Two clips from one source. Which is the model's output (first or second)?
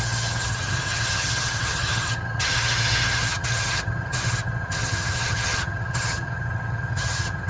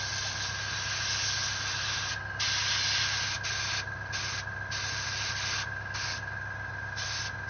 first